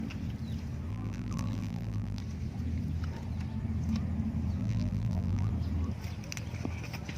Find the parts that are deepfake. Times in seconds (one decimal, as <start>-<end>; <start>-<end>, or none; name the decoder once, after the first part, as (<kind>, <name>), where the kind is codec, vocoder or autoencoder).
0.9-2.2 (vocoder, BigVGAN v2); 4.6-5.5